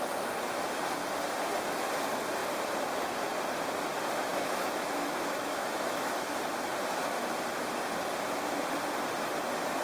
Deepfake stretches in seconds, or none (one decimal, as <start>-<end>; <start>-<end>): 4.3-6.3